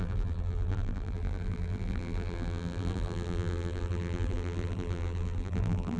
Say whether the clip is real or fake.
fake